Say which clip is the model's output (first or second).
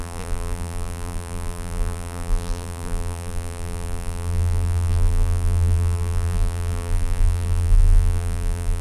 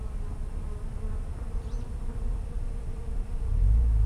first